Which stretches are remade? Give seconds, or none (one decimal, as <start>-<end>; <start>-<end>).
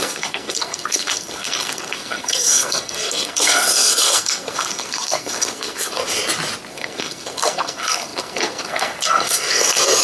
0.0-6.0; 6.7-10.0